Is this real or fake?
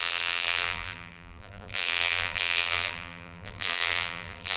fake